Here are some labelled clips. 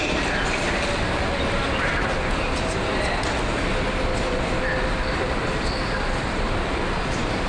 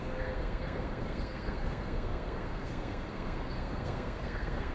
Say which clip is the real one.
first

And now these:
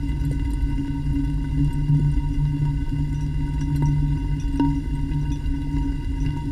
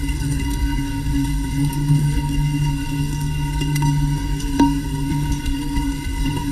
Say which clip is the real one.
first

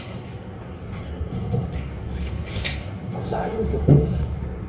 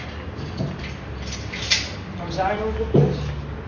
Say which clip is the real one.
second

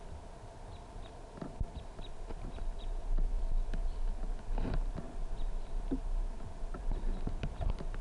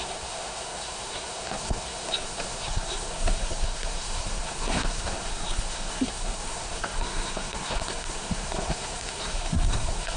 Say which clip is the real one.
first